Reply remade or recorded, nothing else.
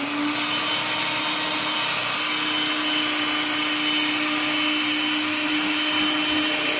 recorded